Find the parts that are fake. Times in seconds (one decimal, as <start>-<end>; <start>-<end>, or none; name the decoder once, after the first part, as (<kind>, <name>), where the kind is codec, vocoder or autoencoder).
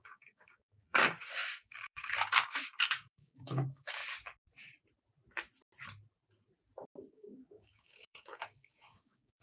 0.0-4.0 (codec, DAC); 7.1-9.4